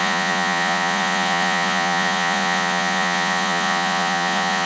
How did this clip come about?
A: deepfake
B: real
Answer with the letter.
A